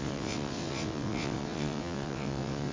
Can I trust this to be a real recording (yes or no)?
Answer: no